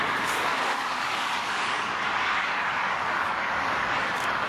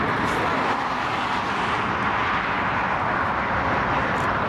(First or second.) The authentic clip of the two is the second